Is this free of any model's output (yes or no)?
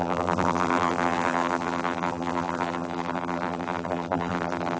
no